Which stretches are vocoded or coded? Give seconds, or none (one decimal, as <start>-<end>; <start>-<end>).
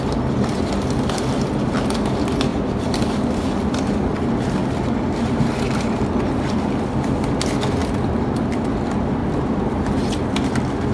2.5-3.3; 7.8-8.7; 9.2-9.9